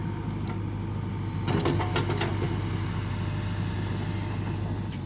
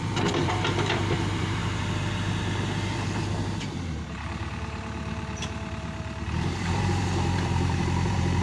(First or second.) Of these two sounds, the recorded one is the first